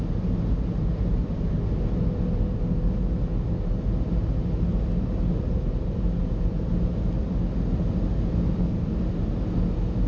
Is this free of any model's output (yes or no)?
yes